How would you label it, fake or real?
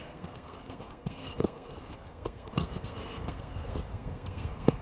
fake